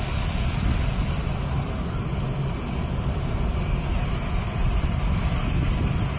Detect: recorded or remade recorded